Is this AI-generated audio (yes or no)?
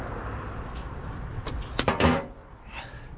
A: no